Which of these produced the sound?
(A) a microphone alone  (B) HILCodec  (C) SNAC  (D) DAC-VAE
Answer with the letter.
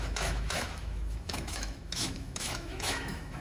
D